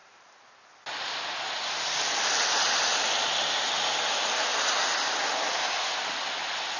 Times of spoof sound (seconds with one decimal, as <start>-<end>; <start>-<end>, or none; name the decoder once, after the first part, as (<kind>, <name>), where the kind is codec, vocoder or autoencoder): none